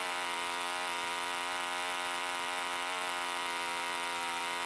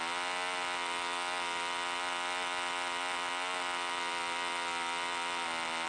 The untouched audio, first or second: second